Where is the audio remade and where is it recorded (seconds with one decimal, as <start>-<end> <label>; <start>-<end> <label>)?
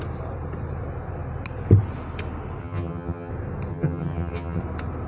0.0-2.6 recorded; 2.6-3.3 remade; 3.3-3.7 recorded; 3.7-4.6 remade; 4.6-5.1 recorded